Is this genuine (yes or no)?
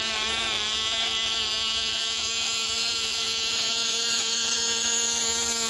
no